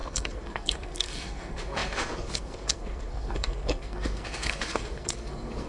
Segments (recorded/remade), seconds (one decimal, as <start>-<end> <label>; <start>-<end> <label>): 0.0-5.7 remade

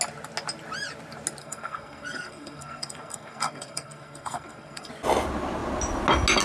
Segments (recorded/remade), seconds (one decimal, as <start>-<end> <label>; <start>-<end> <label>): 0.0-1.4 recorded; 1.4-4.9 remade; 4.9-6.4 recorded

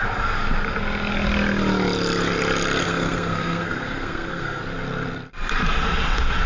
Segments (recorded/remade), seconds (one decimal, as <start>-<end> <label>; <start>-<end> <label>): 0.0-2.8 recorded; 2.8-4.6 remade; 4.6-6.5 recorded

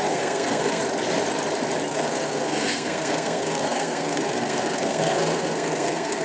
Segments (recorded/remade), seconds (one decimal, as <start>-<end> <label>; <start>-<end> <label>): 0.0-0.8 remade; 0.8-1.9 recorded; 1.9-6.2 remade

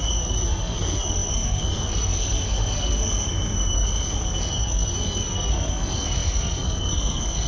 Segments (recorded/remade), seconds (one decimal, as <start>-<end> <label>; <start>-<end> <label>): 0.0-7.5 remade

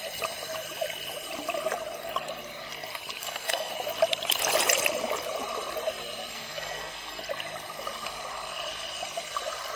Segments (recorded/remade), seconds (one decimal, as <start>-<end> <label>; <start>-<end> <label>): 0.0-3.2 recorded; 3.2-3.7 remade; 3.7-6.3 recorded; 6.3-7.2 remade; 7.2-9.8 recorded

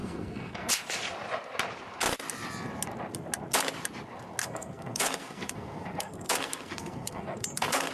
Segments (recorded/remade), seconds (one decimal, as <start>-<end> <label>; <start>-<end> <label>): 0.0-0.7 remade; 0.7-4.4 recorded; 4.4-7.9 remade